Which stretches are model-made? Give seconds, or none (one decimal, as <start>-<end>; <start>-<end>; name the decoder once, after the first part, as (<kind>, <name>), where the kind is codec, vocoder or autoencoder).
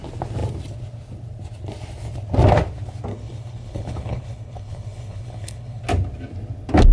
3.1-5.8 (codec, HILCodec)